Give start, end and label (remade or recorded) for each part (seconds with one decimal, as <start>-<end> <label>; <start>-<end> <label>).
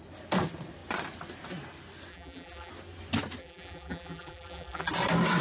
0.0-2.1 recorded; 2.1-2.7 remade; 2.7-3.4 recorded; 3.4-4.9 remade; 4.9-5.4 recorded